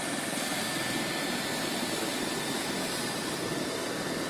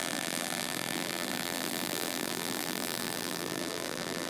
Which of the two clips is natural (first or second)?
first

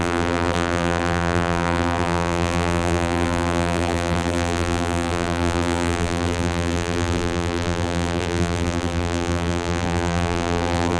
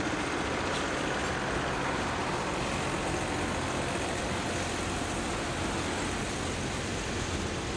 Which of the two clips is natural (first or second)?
second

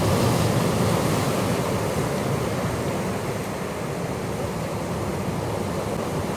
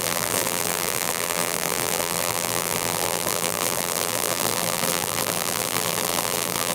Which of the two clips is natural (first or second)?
first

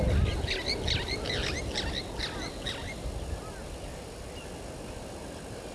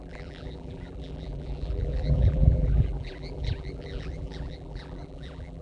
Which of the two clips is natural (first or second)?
first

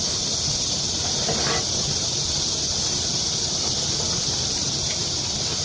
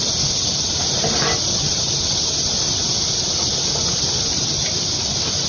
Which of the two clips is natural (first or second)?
first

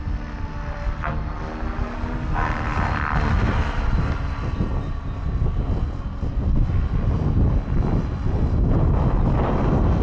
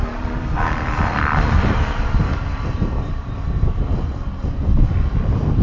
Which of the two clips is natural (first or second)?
first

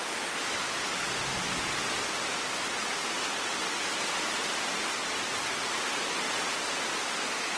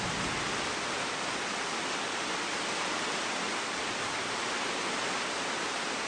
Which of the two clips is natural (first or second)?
first